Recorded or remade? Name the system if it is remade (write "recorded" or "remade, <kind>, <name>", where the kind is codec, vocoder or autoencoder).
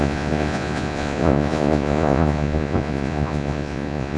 remade, vocoder, Vocos